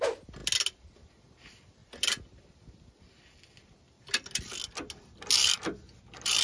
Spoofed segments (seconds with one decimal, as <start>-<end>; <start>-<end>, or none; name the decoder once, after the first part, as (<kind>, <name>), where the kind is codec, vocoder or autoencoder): none